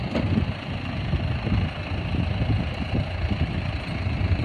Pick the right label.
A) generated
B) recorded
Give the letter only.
B